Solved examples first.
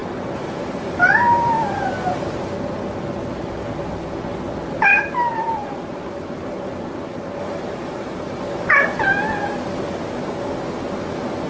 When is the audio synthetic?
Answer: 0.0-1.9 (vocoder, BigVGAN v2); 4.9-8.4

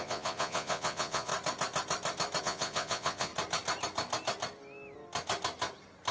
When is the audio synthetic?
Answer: 0.0-1.3 (vocoder, Vocos); 2.4-3.3